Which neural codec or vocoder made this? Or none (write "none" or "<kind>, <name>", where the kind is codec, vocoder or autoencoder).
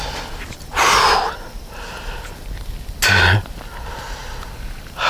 none